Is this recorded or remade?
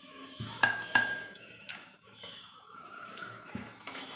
remade